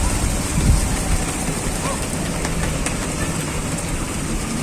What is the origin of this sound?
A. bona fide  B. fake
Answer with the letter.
A